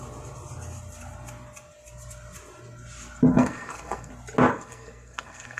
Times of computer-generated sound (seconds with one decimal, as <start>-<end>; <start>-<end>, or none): 3.3-4.1; 4.5-5.6